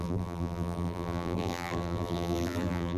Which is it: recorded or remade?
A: remade